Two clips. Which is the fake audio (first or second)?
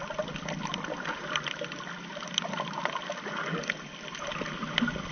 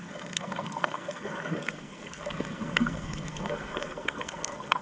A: second